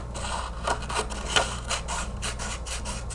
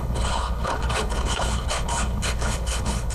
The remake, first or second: second